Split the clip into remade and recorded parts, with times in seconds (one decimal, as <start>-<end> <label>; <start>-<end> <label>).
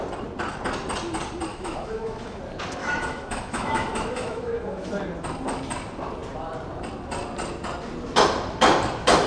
0.0-1.5 recorded; 1.5-2.4 remade; 2.4-2.8 recorded; 2.8-4.9 remade; 4.9-9.3 recorded